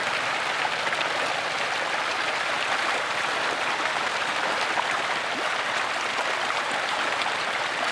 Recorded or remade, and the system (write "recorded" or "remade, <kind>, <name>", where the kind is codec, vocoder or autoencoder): recorded